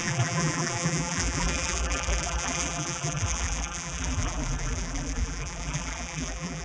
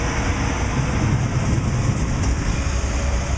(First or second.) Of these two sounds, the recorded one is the second